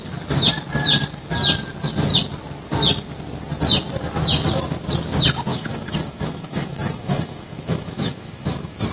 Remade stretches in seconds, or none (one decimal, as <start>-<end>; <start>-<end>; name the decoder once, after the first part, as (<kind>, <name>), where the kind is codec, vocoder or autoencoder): 5.5-8.9 (autoencoder, DAC-VAE)